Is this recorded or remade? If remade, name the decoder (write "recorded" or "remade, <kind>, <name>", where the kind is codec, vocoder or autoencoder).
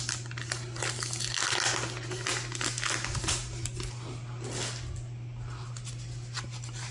recorded